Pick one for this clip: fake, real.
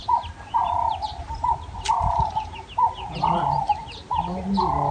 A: real